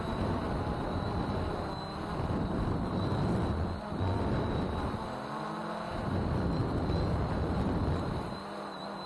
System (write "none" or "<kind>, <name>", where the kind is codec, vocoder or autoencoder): vocoder, BigVGAN v2